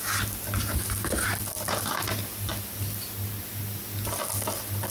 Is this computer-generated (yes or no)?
no